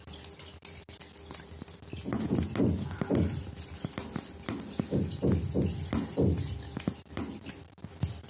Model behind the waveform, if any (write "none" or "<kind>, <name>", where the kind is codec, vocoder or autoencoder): none